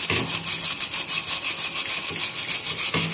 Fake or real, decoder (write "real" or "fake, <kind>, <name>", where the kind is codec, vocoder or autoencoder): real